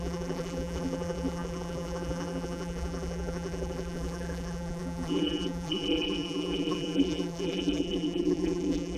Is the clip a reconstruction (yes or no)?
yes